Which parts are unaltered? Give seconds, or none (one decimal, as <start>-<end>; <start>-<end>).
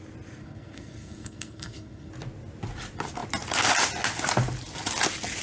0.0-0.4; 2.1-5.4